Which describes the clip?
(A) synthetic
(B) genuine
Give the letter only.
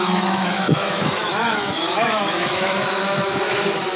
A